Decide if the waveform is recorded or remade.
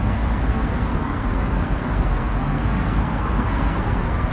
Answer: remade